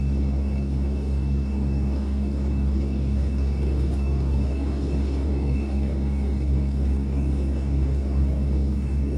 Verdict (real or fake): fake